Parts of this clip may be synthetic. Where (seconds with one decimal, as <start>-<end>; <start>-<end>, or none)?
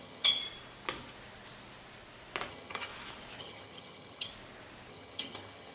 0.0-0.4; 2.5-2.9; 3.4-4.3; 4.9-5.7